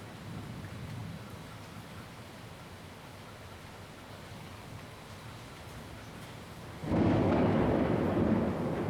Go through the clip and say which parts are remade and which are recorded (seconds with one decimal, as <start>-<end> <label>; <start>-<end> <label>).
0.0-4.3 recorded; 4.3-4.8 remade; 4.8-6.8 recorded; 6.8-7.6 remade; 7.6-8.9 recorded